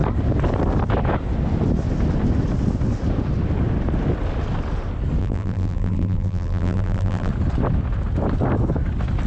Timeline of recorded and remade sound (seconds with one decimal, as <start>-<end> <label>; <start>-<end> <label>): 0.0-5.2 recorded; 5.2-7.3 remade; 7.3-9.3 recorded